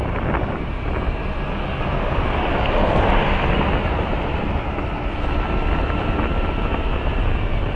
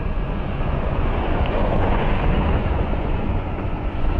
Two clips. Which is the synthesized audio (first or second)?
second